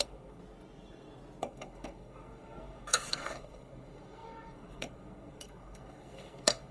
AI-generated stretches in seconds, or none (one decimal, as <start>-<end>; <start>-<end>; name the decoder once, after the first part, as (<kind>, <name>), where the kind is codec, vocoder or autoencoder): 0.0-0.4 (codec, SNAC); 1.4-6.7